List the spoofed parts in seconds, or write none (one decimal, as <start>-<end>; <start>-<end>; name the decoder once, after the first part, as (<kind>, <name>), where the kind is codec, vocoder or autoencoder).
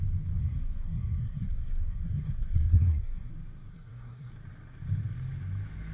0.4-3.3 (codec, SNAC); 3.7-4.3